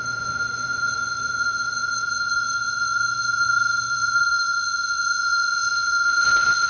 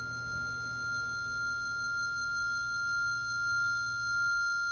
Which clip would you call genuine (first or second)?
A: second